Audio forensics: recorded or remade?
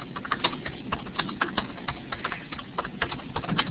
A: recorded